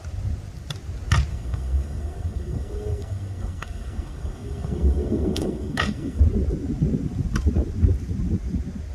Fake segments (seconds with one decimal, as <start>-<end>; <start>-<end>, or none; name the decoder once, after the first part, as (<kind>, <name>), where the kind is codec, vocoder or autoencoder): 1.3-6.2 (codec, SNAC)